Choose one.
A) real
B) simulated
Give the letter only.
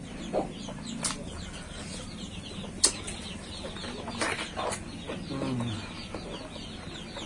A